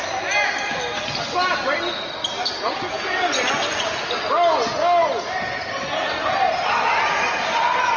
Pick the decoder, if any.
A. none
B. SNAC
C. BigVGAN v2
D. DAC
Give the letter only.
A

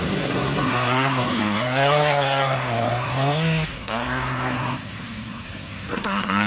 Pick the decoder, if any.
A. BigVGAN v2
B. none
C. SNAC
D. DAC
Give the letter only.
C